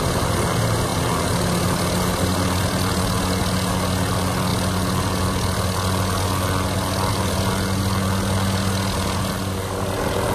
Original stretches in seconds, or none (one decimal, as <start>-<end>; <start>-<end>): 0.0-10.3